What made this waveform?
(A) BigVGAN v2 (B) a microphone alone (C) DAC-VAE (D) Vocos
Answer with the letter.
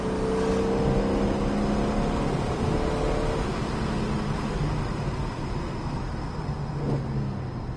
B